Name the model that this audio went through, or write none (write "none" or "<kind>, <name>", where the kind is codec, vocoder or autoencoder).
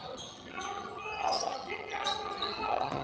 vocoder, HiFi-GAN